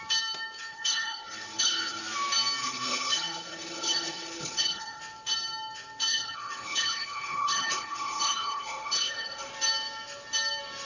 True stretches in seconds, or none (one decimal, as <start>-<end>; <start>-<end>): 0.0-0.7; 2.0-2.6; 5.0-6.1; 9.5-10.9